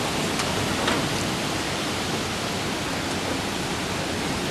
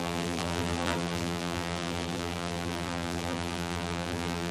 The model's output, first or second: second